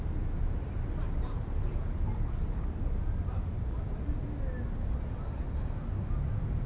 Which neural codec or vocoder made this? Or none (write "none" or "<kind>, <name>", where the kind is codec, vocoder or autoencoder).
none